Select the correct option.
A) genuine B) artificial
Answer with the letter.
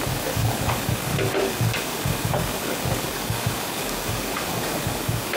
B